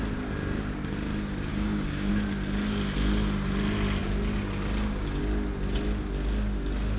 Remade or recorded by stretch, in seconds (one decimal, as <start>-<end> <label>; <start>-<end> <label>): 0.0-1.5 recorded; 1.5-2.1 remade; 2.1-7.0 recorded